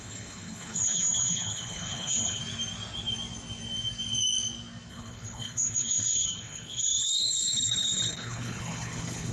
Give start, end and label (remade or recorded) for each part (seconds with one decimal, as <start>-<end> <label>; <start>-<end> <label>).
0.0-2.4 remade; 2.4-4.9 recorded; 4.9-9.3 remade